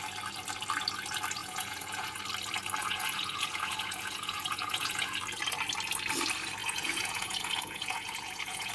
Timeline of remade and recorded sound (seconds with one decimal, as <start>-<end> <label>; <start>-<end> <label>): 0.0-1.4 recorded; 1.4-2.2 remade; 2.2-2.8 recorded; 2.8-5.2 remade; 5.2-6.6 recorded; 6.6-8.7 remade